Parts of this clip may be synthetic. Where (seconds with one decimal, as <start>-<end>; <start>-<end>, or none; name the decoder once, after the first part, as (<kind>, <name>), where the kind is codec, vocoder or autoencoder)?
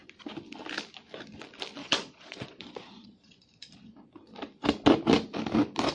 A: 1.8-4.1 (vocoder, Vocos)